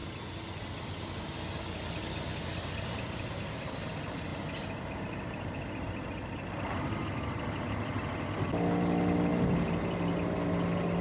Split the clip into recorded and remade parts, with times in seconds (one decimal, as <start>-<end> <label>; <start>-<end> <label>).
0.0-11.0 recorded